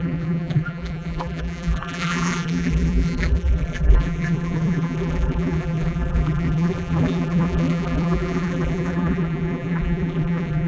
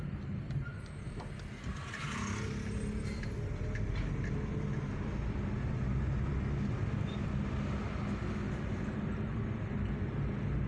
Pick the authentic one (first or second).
second